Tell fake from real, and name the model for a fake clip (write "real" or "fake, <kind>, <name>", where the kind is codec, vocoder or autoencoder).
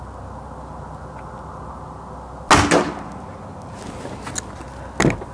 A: real